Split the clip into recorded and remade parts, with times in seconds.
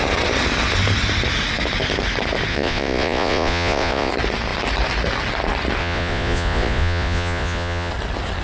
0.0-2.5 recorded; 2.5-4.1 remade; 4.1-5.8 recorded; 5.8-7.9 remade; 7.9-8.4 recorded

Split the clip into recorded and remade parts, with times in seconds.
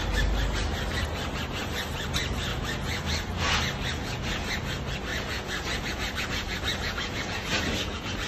0.0-2.5 recorded; 2.5-3.6 remade; 3.6-4.0 recorded; 4.0-4.6 remade; 4.6-5.1 recorded; 5.1-8.3 remade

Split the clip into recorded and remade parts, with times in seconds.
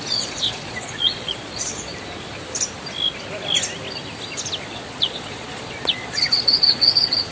0.0-1.9 remade; 1.9-4.6 recorded; 4.6-7.3 remade